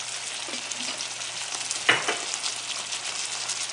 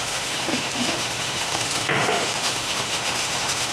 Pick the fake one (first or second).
second